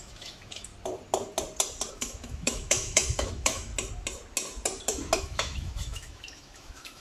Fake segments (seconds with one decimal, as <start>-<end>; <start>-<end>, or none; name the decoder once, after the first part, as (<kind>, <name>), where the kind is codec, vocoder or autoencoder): 0.0-0.7 (autoencoder, DAC-VAE); 1.9-3.7; 5.2-7.0